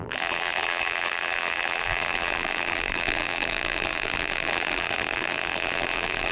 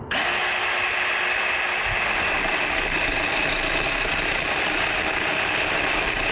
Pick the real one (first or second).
second